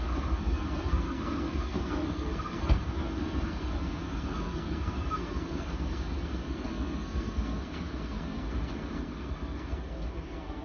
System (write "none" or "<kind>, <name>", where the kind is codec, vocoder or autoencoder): codec, SNAC